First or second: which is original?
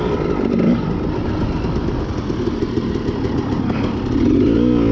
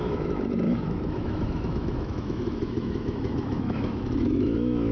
first